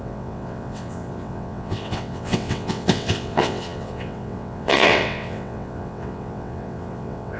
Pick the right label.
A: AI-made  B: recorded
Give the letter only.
A